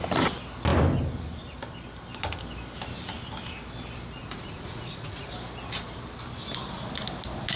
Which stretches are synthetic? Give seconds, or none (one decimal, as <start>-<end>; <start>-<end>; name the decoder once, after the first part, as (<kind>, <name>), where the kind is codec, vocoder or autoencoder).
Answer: 4.2-5.3 (vocoder, Vocos)